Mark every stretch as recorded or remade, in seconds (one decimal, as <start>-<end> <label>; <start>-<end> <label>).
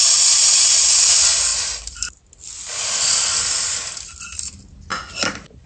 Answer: 0.0-1.5 recorded; 1.5-2.3 remade; 2.3-4.9 recorded; 4.9-5.7 remade